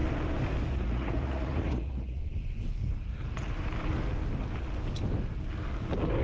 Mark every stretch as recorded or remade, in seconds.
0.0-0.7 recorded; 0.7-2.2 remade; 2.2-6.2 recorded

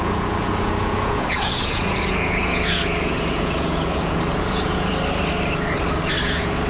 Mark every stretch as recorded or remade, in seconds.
0.0-4.9 remade; 4.9-6.2 recorded; 6.2-6.7 remade

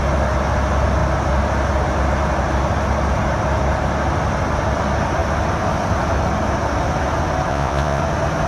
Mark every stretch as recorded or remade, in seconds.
0.0-7.5 recorded; 7.5-8.0 remade; 8.0-8.5 recorded

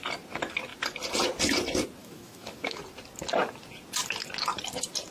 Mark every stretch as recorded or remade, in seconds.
0.0-2.0 recorded; 2.0-2.8 remade; 2.8-5.1 recorded

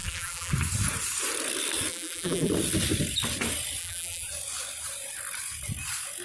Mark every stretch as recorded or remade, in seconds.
0.0-0.5 remade; 0.5-1.9 recorded; 1.9-2.5 remade; 2.5-3.8 recorded; 3.8-4.3 remade; 4.3-6.2 recorded

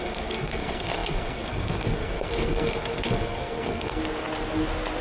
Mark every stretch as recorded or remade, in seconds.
0.0-4.0 remade; 4.0-5.0 recorded

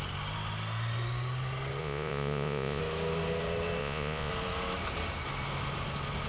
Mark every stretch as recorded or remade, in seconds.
0.0-1.8 recorded; 1.8-2.8 remade; 2.8-3.8 recorded; 3.8-4.3 remade; 4.3-6.3 recorded

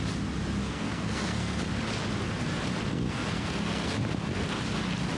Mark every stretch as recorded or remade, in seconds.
0.0-0.6 recorded; 0.6-1.6 remade; 1.6-2.9 recorded; 2.9-3.9 remade; 3.9-5.2 recorded